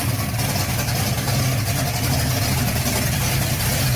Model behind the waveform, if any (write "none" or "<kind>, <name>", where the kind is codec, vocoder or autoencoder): vocoder, BigVGAN v2